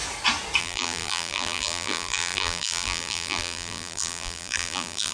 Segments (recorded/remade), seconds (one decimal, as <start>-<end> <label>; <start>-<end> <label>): 0.0-0.6 recorded; 0.6-5.1 remade